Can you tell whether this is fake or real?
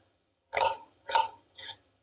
fake